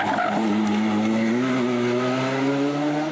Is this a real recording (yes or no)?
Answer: yes